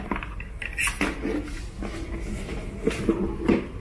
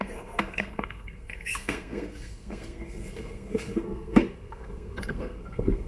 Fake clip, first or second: second